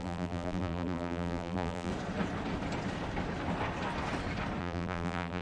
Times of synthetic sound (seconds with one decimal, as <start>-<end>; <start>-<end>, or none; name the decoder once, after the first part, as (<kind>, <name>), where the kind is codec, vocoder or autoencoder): 0.0-1.9 (vocoder, BigVGAN v2); 4.6-5.4